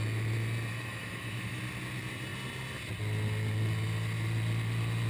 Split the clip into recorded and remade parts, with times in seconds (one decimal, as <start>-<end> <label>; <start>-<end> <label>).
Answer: 0.0-0.7 recorded; 0.7-1.6 remade; 1.6-5.1 recorded